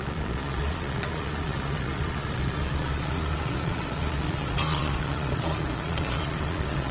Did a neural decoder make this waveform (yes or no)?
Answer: yes